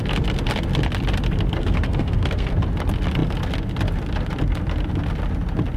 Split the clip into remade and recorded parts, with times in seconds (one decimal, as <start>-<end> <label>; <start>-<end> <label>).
0.0-1.6 recorded; 1.6-2.5 remade; 2.5-5.8 recorded